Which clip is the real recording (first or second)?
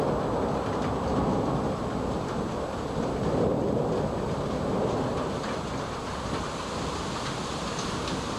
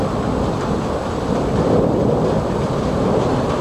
first